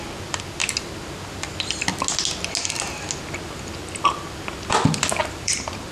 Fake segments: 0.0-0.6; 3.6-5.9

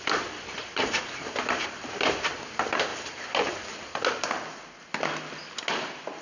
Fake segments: 0.6-1.9; 2.9-3.7

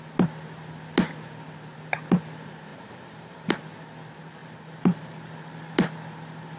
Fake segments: 2.7-3.5

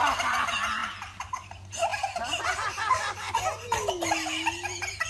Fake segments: none

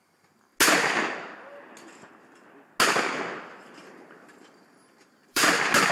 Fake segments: 3.8-5.4